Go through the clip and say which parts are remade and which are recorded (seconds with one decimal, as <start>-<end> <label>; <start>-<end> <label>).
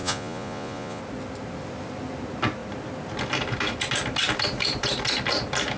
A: 0.0-1.0 remade; 1.0-5.8 recorded